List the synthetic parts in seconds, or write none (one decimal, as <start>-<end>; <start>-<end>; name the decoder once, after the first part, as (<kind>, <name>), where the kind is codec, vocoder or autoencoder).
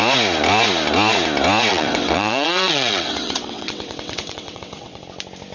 1.7-5.0 (vocoder, WaveNeXt)